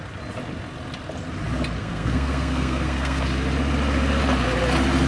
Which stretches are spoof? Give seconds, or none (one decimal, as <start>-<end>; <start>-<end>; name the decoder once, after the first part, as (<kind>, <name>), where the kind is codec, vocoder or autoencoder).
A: 1.8-3.2 (codec, SNAC)